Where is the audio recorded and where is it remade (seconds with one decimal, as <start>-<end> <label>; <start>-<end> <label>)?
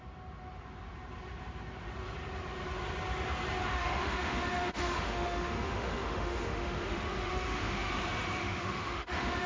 0.0-3.7 recorded; 3.7-7.9 remade; 7.9-8.4 recorded; 8.4-9.5 remade